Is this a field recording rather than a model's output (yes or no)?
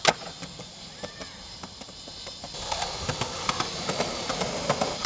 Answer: yes